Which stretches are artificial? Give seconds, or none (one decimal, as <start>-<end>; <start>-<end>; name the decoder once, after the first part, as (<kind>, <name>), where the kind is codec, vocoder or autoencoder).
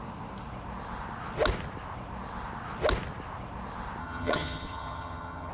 4.0-5.5 (vocoder, HiFi-GAN)